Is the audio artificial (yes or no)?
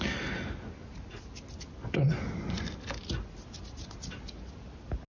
no